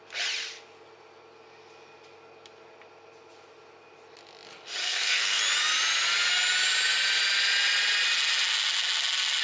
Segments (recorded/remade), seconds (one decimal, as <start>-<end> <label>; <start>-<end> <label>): 0.0-4.8 recorded; 4.8-5.4 remade; 5.4-9.4 recorded